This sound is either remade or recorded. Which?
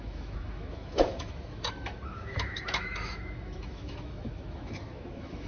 remade